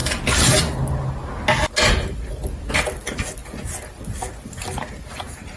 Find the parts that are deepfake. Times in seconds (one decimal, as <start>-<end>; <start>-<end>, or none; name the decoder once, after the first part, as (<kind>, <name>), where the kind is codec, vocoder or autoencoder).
none